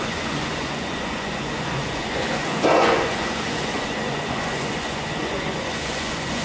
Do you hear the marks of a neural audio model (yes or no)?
yes